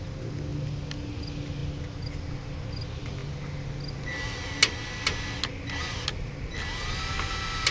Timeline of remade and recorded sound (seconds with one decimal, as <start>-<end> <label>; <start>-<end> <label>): 0.0-7.7 recorded